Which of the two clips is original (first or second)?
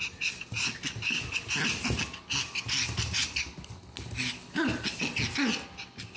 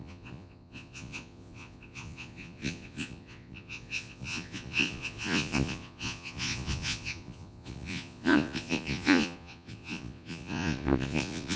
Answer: first